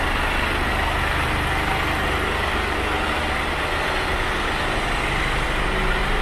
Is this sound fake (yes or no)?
no